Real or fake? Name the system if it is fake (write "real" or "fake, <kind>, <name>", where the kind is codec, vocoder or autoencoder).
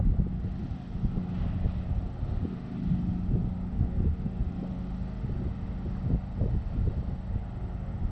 real